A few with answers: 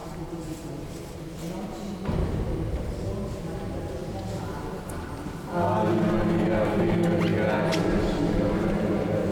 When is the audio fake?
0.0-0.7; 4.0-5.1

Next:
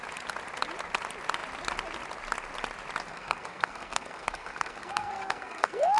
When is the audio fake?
3.1-6.0

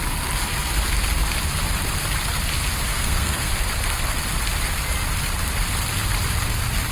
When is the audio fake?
2.9-3.5

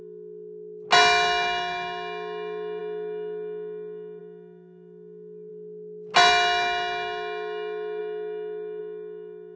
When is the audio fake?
none

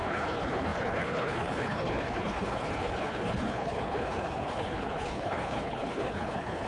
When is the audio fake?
0.0-6.7

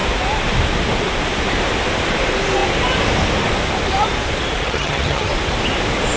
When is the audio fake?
4.6-5.3

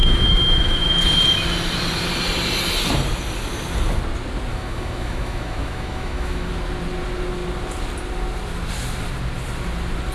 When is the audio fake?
0.0-0.9; 4.5-6.5

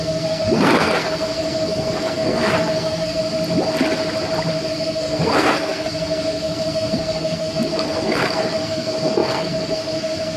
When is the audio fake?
0.0-3.2; 4.6-10.4